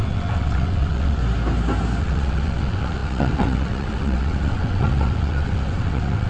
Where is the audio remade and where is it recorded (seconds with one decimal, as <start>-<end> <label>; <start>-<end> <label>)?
0.0-1.2 remade; 1.2-2.0 recorded; 2.0-6.3 remade